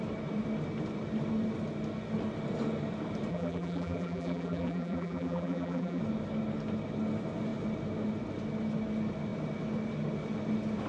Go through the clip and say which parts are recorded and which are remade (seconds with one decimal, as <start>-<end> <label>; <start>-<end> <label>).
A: 0.0-3.3 recorded; 3.3-6.0 remade; 6.0-10.9 recorded